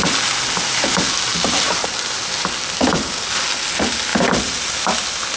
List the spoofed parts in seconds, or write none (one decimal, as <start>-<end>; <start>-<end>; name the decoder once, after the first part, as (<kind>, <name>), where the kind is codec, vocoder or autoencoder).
none